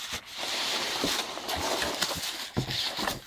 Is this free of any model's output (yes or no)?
yes